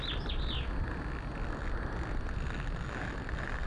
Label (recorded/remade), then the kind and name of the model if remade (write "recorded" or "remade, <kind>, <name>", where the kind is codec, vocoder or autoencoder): recorded